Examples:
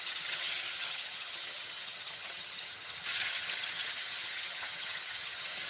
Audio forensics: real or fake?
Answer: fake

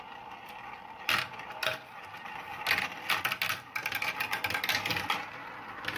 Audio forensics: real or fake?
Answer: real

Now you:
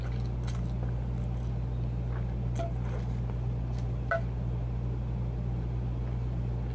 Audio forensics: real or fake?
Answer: real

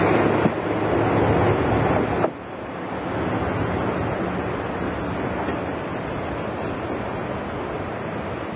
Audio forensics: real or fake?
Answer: real